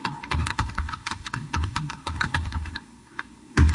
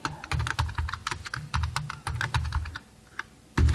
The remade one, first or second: first